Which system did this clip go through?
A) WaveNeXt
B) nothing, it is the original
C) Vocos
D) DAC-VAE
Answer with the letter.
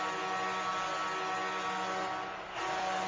B